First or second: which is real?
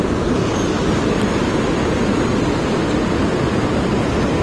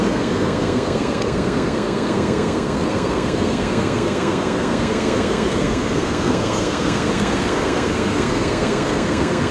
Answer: first